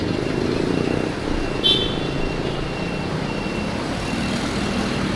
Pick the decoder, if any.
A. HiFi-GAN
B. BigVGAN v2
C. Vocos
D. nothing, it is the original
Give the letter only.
D